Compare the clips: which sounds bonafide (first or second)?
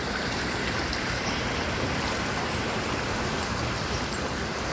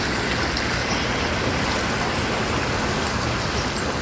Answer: second